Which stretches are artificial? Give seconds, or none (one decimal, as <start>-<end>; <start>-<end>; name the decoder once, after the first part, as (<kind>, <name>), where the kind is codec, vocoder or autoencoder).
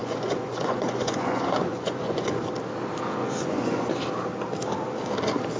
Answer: 0.0-2.4 (vocoder, Vocos); 3.2-3.9